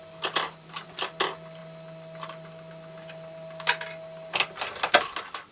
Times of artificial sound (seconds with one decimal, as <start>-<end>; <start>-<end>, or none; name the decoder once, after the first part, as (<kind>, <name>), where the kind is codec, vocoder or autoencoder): none